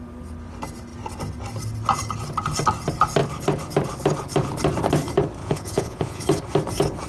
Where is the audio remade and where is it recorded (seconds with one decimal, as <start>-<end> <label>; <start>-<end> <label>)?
0.0-5.4 recorded; 5.4-6.2 remade; 6.2-7.1 recorded